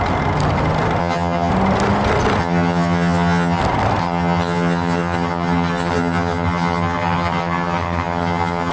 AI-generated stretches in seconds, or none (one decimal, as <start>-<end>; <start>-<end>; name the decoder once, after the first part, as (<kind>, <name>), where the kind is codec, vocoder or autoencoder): 1.0-1.5 (vocoder, HiFi-GAN); 2.4-3.6; 4.0-8.7